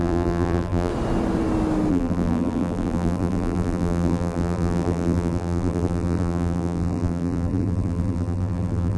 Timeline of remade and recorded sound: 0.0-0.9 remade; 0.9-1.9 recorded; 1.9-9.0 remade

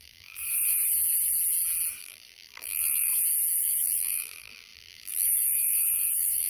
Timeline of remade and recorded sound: 0.0-0.4 remade; 0.4-2.0 recorded; 2.0-3.1 remade; 3.1-3.6 recorded; 3.6-6.5 remade

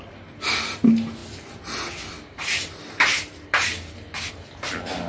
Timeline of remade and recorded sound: 0.0-5.1 recorded

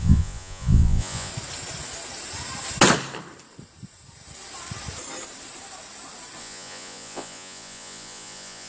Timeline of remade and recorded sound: 0.0-1.3 remade; 1.3-6.4 recorded; 6.4-8.7 remade

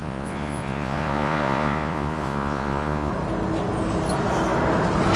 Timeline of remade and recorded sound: 0.0-3.1 remade; 3.1-5.2 recorded

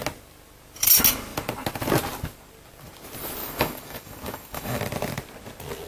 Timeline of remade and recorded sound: 0.0-3.4 recorded; 3.4-4.8 remade; 4.8-5.9 recorded

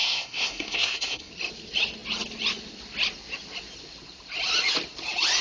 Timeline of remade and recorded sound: 0.0-1.3 remade; 1.3-5.4 recorded